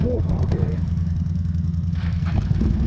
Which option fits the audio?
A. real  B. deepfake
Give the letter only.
B